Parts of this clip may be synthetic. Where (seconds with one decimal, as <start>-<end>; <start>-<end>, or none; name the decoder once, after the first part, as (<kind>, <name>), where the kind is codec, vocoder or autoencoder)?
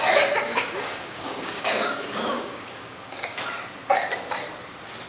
0.5-3.4 (codec, DAC)